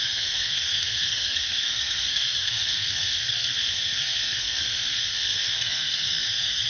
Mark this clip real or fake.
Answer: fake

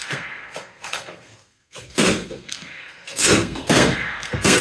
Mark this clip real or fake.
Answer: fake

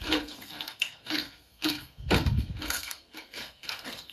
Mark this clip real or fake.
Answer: fake